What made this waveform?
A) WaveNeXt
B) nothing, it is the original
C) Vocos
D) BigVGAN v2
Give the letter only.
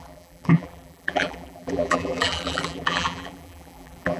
D